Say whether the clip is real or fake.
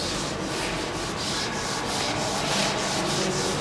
real